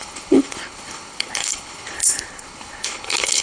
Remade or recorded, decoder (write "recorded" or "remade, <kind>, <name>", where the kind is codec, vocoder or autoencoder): remade, codec, HILCodec